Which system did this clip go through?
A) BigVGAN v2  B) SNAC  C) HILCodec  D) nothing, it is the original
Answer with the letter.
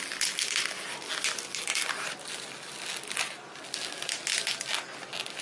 D